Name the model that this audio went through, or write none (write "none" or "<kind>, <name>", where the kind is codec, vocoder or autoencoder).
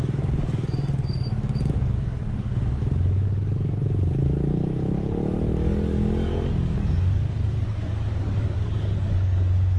codec, DAC